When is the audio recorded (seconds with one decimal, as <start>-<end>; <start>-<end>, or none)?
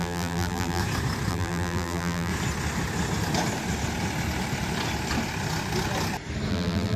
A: 0.8-1.3; 2.3-6.5